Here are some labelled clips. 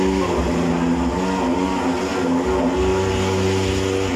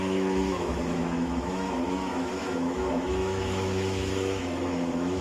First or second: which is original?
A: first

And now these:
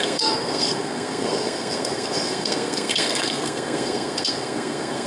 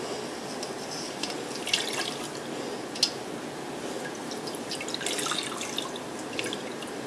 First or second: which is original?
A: second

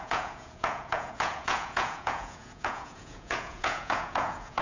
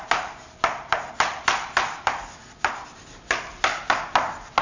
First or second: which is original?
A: second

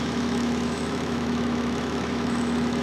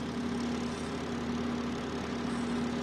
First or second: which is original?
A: second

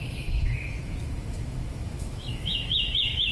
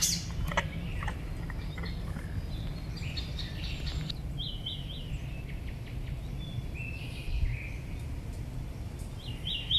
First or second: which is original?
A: second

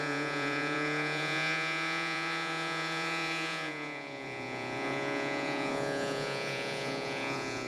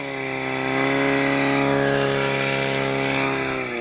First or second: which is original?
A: second